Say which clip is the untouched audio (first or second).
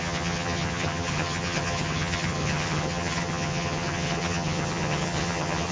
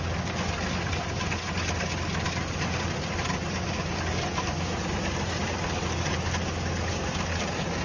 second